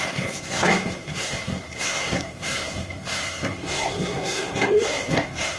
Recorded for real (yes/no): no